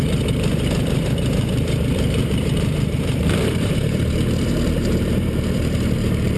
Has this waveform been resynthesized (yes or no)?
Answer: yes